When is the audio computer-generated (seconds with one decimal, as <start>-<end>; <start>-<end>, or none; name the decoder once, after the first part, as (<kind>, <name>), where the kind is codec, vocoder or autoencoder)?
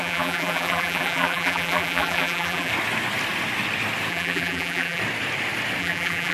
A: 0.0-2.7 (vocoder, BigVGAN v2); 4.1-5.0; 5.8-6.3